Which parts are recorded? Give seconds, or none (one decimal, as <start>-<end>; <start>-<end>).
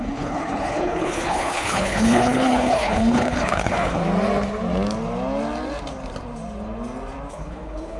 4.0-7.3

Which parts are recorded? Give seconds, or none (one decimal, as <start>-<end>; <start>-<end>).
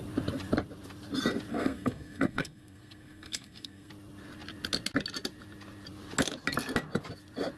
0.0-1.5; 3.9-7.6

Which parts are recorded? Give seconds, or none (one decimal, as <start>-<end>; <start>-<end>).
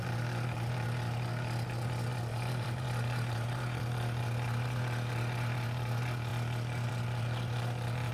0.0-2.3; 3.8-8.1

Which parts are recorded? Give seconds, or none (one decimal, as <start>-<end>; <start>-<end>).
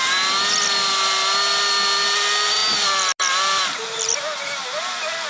0.0-5.3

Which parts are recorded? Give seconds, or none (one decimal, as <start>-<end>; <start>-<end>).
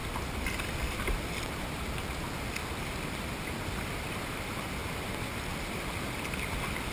0.0-6.9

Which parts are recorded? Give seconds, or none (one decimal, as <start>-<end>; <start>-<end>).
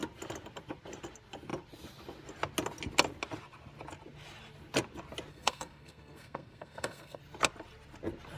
0.0-5.3; 7.2-8.4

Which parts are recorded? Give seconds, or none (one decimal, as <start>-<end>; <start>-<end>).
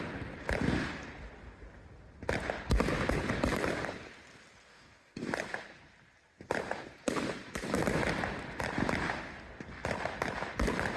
0.0-4.7; 5.2-11.0